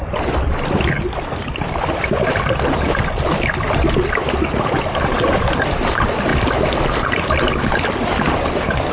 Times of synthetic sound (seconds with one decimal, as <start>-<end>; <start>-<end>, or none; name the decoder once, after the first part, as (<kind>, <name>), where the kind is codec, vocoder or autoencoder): none